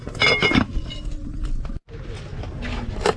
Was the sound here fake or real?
real